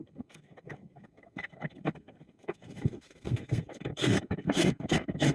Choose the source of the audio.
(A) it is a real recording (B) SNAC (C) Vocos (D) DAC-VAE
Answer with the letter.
B